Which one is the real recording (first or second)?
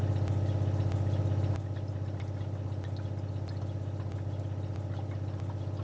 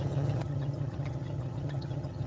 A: first